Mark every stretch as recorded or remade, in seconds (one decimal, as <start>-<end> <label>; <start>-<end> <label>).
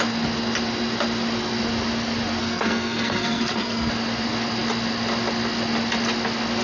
0.0-2.4 recorded; 2.4-3.9 remade; 3.9-6.6 recorded